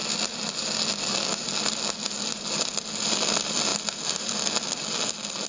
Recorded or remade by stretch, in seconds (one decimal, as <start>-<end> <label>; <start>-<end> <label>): 0.0-5.5 recorded